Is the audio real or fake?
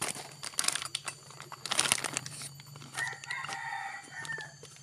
real